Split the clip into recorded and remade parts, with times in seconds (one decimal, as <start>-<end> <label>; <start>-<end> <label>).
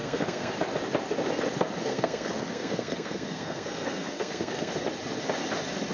0.0-0.5 remade; 0.5-1.8 recorded; 1.8-4.7 remade; 4.7-5.9 recorded